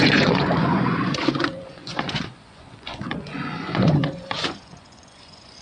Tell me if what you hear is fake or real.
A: fake